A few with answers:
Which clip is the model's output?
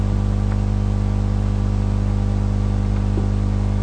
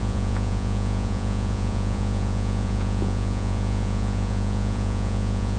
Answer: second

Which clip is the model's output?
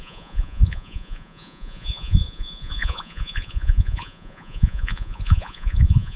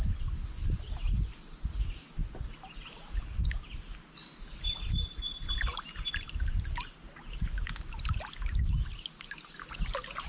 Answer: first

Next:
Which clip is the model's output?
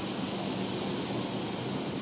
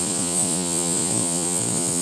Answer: second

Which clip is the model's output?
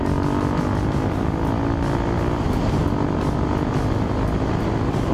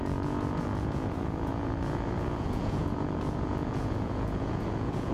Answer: second